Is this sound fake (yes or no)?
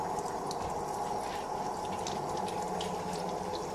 no